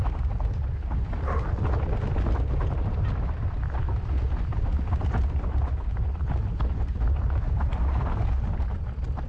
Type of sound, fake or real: real